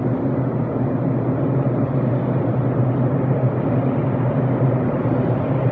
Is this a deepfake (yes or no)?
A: no